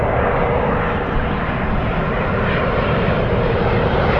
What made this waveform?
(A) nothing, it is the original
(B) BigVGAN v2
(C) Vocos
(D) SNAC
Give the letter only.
B